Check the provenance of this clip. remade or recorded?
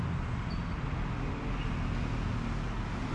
recorded